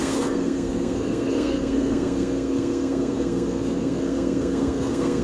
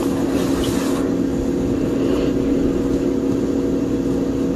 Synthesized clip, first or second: first